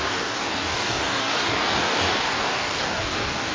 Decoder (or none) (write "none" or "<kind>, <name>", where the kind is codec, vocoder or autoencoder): codec, DAC